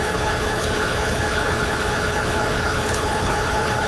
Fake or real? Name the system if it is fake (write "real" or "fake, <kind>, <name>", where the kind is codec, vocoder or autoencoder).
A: fake, codec, HILCodec